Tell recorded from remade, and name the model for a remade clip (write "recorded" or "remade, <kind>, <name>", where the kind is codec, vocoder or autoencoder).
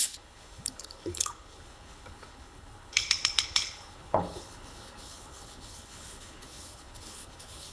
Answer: remade, codec, HILCodec